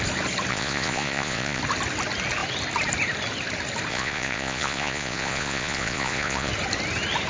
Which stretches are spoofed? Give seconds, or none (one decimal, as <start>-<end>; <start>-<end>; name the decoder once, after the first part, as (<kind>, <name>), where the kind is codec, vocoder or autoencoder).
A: 0.5-1.6 (vocoder, Vocos); 3.9-6.5

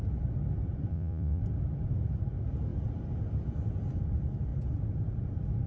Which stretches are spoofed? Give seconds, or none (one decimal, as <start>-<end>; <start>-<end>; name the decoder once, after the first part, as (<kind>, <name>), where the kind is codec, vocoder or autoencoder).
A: 0.9-1.4 (vocoder, Vocos)

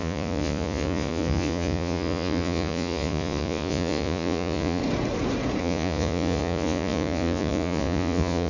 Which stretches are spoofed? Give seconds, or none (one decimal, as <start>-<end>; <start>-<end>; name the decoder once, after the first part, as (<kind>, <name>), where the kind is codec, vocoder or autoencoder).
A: 0.0-4.8 (vocoder, Vocos); 5.6-8.5